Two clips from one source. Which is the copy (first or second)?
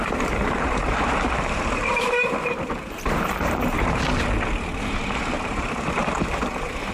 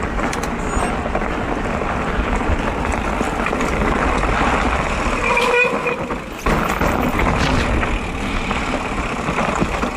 first